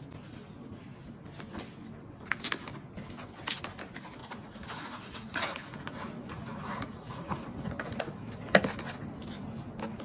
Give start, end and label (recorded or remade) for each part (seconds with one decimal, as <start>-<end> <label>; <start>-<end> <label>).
0.0-4.2 recorded; 4.2-8.0 remade; 8.0-10.0 recorded